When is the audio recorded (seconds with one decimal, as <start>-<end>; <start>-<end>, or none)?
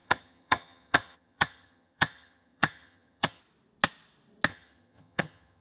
3.4-4.5